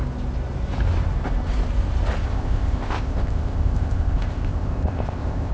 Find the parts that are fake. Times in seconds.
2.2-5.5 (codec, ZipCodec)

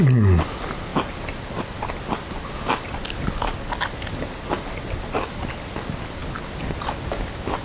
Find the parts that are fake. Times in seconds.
none

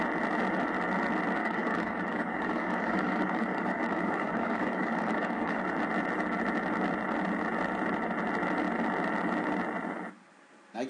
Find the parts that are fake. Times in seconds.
1.4-5.6 (codec, DAC)